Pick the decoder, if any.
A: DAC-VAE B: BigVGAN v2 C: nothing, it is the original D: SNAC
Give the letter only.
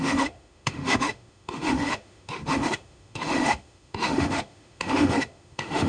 A